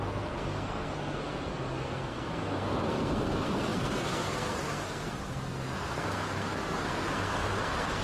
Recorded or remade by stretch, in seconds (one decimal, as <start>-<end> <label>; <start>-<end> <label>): 0.0-8.0 remade